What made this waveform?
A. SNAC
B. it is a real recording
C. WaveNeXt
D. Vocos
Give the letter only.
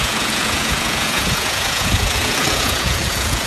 D